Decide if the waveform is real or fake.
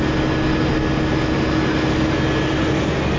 real